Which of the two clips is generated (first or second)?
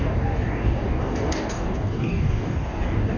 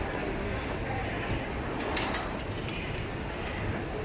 first